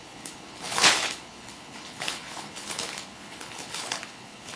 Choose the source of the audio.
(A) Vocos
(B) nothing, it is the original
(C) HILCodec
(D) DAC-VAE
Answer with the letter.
C